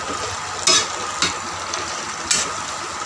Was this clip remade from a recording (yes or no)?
no